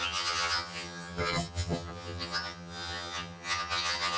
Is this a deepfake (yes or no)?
yes